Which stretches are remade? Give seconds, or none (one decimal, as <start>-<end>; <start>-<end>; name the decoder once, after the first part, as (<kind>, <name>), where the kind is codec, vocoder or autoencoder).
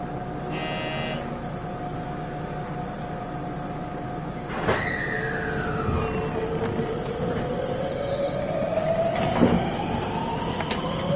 none